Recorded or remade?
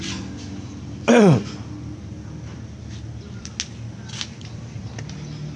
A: recorded